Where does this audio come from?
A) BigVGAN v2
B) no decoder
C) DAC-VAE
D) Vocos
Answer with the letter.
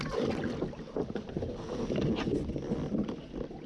B